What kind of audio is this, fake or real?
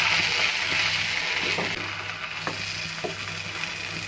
real